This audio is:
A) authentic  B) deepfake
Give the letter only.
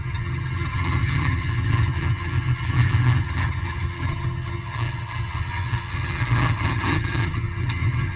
B